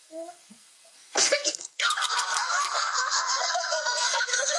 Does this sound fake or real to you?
fake